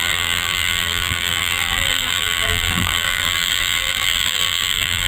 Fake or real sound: fake